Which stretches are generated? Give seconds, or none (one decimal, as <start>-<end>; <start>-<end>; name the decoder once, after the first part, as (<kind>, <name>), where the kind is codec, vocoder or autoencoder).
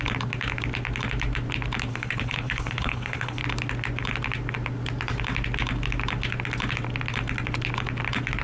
1.9-3.4 (codec, HILCodec)